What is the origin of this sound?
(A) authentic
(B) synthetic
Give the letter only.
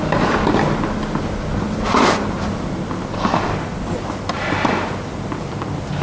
A